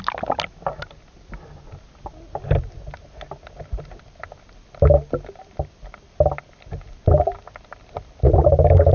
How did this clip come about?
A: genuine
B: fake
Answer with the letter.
A